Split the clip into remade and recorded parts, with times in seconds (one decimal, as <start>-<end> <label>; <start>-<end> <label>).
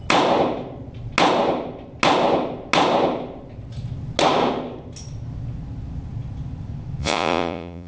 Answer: 0.0-7.0 recorded; 7.0-7.9 remade